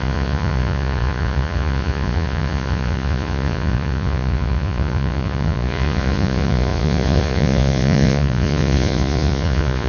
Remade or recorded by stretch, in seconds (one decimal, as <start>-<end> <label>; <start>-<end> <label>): 0.0-9.9 remade

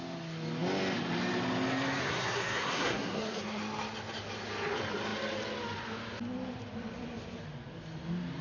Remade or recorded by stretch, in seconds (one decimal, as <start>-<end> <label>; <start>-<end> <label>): 0.0-2.0 recorded; 2.0-3.6 remade; 3.6-8.4 recorded

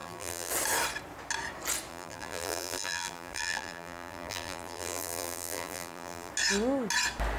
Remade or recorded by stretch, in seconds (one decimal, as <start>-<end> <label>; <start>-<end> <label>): 0.0-0.5 remade; 0.5-1.9 recorded; 1.9-6.3 remade; 6.3-7.4 recorded

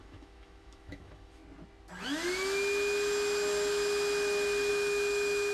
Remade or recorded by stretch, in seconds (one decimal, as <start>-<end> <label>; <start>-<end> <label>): 0.0-1.4 remade; 1.4-4.7 recorded; 4.7-5.5 remade

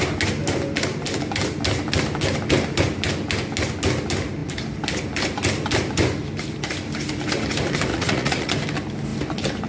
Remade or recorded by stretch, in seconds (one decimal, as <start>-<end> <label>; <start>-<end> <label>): 0.0-7.9 recorded; 7.9-8.5 remade; 8.5-9.7 recorded

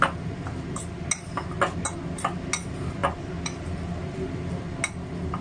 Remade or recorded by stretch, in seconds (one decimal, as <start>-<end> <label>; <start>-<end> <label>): 0.0-5.4 recorded

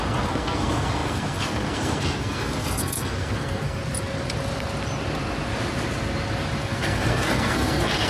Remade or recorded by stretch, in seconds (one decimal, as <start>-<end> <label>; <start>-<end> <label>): 0.0-3.8 remade; 3.8-6.6 recorded; 6.6-8.1 remade

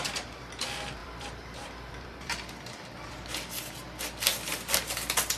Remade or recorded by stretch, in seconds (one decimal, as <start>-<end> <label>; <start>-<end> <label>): 0.0-1.0 recorded; 1.0-3.1 remade; 3.1-5.4 recorded